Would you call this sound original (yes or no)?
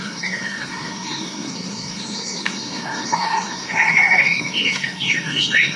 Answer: no